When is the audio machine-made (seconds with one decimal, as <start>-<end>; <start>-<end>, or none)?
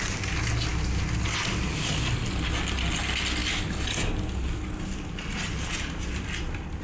none